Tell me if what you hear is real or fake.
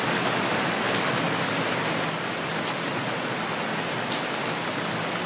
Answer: real